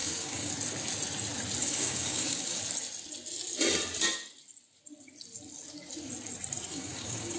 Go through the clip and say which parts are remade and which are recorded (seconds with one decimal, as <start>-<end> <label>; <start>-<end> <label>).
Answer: 0.0-0.5 remade; 0.5-1.6 recorded; 1.6-2.6 remade; 2.6-6.7 recorded; 6.7-7.4 remade